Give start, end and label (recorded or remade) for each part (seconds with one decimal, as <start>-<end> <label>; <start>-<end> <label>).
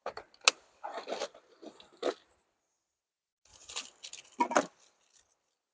0.0-5.7 recorded